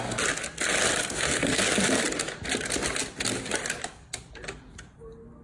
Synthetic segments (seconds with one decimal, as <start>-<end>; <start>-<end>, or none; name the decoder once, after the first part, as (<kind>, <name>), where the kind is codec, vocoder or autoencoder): 1.0-1.6 (codec, SNAC)